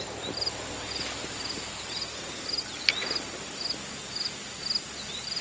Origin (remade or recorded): recorded